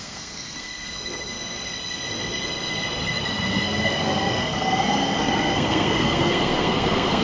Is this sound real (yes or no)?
no